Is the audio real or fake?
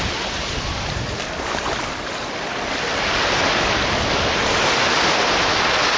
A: real